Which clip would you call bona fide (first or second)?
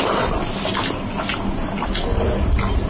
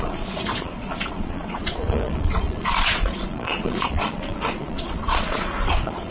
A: first